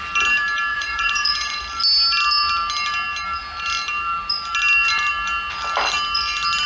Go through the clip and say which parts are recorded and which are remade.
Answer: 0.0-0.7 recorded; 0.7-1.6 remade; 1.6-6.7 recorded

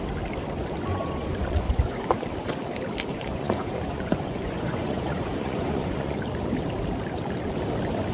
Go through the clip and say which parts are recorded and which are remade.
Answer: 0.0-0.9 recorded; 0.9-2.0 remade; 2.0-3.1 recorded; 3.1-6.2 remade; 6.2-8.1 recorded